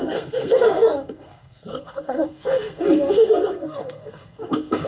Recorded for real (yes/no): no